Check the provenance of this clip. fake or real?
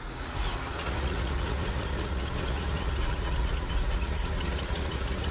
fake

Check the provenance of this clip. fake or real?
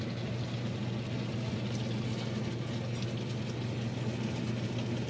real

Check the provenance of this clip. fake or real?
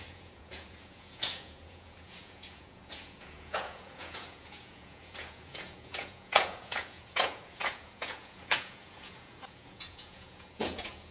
fake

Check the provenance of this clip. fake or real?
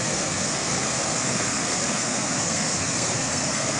fake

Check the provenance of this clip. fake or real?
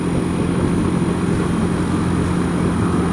real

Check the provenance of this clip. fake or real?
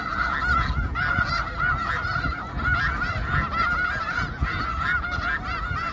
real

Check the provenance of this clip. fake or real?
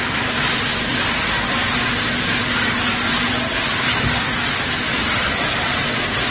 real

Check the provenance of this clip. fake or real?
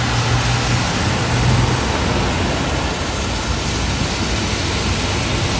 real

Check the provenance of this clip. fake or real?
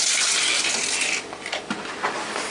real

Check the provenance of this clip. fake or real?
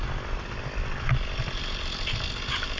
real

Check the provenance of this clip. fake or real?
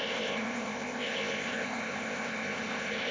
fake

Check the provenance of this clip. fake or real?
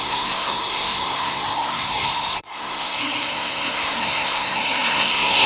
fake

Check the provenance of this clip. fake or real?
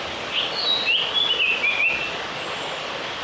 real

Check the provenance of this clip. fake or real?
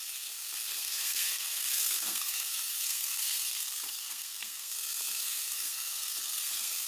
fake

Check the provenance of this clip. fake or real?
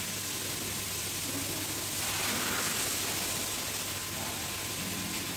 real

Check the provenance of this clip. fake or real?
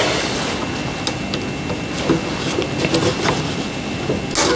real